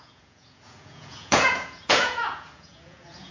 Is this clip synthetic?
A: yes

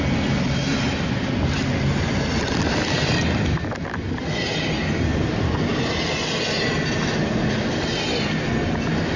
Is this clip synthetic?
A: no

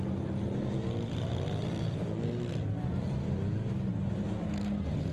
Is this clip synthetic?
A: no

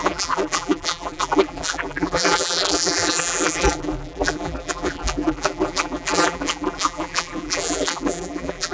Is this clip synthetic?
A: yes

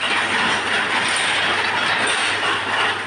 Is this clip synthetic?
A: no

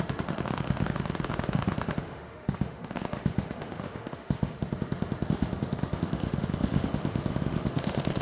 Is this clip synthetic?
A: yes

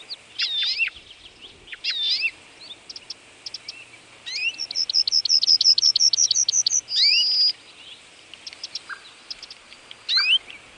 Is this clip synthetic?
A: no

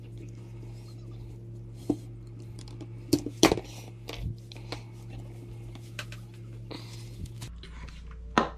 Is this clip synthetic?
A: no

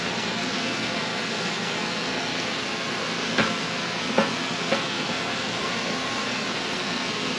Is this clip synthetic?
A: yes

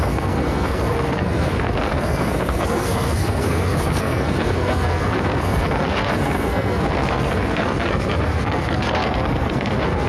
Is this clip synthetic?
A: yes